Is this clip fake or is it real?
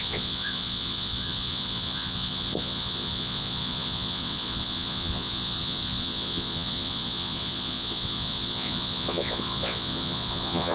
fake